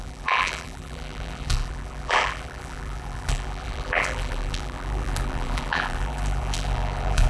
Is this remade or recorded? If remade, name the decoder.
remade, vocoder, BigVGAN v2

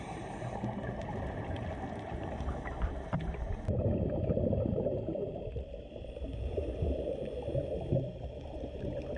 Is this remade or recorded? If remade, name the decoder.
remade, vocoder, BigVGAN v2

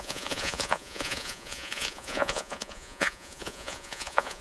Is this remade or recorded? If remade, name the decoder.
remade, vocoder, Vocos